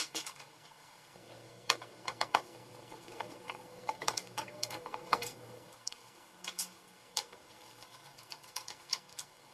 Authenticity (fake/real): fake